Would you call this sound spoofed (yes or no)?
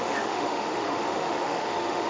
yes